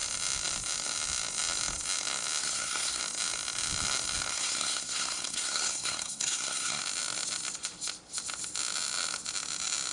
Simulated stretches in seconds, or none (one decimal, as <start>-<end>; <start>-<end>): 2.4-3.0; 4.3-6.8